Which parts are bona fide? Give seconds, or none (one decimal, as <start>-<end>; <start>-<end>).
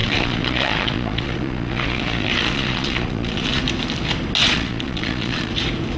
3.6-4.4; 5.5-6.0